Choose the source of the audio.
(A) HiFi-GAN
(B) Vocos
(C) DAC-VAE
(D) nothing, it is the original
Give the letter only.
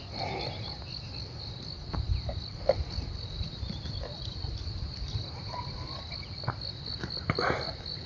D